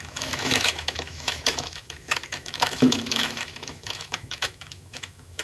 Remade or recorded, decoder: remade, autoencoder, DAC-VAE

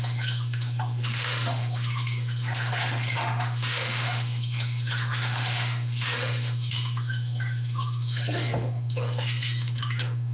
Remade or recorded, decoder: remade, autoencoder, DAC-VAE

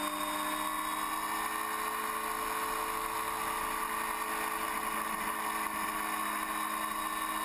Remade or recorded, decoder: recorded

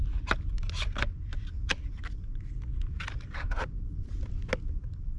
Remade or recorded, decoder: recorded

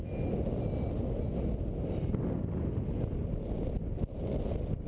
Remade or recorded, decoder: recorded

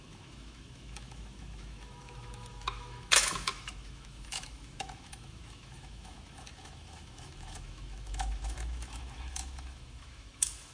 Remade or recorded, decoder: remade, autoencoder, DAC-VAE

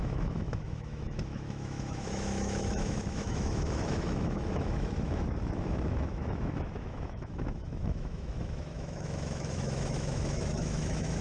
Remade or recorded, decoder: remade, autoencoder, DAC-VAE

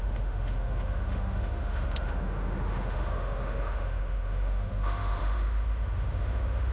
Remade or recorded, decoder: remade, autoencoder, DAC-VAE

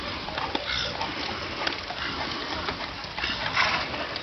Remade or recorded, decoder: recorded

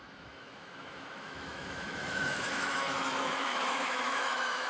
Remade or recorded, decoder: remade, autoencoder, DAC-VAE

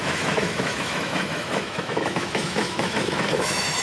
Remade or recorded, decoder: remade, autoencoder, DAC-VAE